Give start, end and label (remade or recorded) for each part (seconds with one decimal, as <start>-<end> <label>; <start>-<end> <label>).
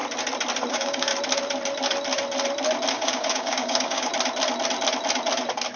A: 0.0-0.7 recorded; 0.7-1.1 remade; 1.1-2.9 recorded; 2.9-4.1 remade; 4.1-5.8 recorded